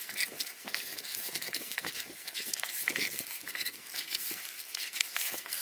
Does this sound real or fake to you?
fake